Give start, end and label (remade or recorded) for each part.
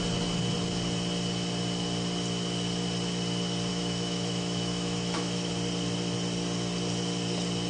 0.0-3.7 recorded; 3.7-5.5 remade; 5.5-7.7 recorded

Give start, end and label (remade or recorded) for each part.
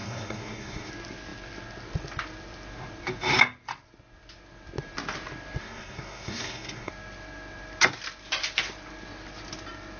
0.0-0.9 remade; 0.9-5.6 recorded; 5.6-6.9 remade; 6.9-10.0 recorded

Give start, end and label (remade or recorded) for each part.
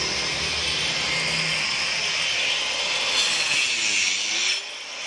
0.0-5.1 recorded